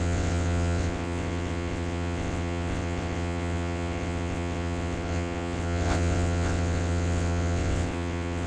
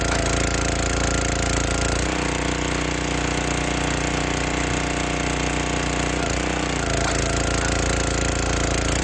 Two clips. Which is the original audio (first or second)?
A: second